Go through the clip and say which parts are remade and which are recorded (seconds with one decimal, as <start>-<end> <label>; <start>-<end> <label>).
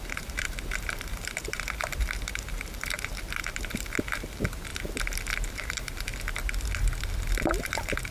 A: 0.0-4.7 remade; 4.7-5.5 recorded; 5.5-6.1 remade; 6.1-7.6 recorded; 7.6-8.1 remade